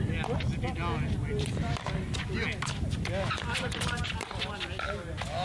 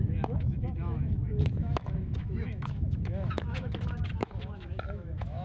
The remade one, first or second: second